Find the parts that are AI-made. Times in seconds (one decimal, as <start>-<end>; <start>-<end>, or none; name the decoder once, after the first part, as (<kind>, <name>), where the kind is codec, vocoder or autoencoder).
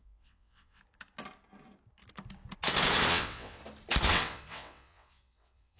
0.0-0.8 (vocoder, WaveNeXt); 3.1-3.6; 4.1-5.8